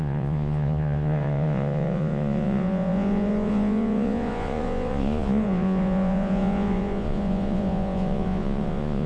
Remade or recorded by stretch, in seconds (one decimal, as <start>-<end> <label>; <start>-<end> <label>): 0.0-9.1 remade

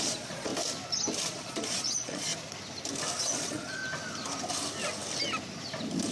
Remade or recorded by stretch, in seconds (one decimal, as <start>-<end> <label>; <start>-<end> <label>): 0.0-0.5 remade; 0.5-1.3 recorded; 1.3-2.3 remade; 2.3-3.2 recorded; 3.2-3.8 remade; 3.8-6.1 recorded

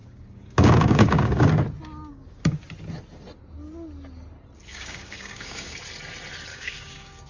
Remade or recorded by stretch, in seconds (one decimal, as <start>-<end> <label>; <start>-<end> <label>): 0.0-1.5 remade; 1.5-2.1 recorded; 2.1-2.6 remade; 2.6-4.7 recorded; 4.7-5.7 remade; 5.7-6.5 recorded; 6.5-7.3 remade

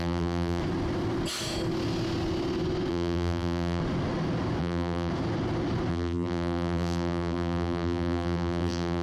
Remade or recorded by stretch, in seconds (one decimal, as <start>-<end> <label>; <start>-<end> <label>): 0.0-0.6 remade; 0.6-2.9 recorded; 2.9-3.8 remade; 3.8-4.6 recorded; 4.6-5.1 remade; 5.1-5.9 recorded; 5.9-9.0 remade